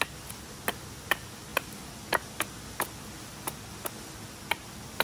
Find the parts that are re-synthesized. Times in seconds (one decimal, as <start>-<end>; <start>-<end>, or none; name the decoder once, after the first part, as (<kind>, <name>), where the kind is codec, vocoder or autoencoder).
none